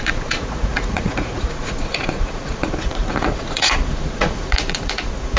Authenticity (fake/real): fake